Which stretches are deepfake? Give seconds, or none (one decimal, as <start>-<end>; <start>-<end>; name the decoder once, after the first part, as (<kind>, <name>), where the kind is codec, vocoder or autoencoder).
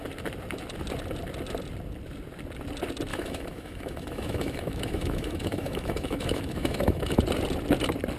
3.1-7.2 (autoencoder, DAC-VAE)